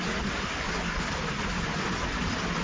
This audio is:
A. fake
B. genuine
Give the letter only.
B